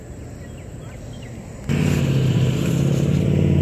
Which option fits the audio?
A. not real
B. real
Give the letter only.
A